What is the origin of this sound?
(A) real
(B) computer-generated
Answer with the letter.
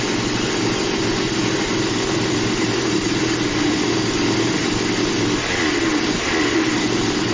A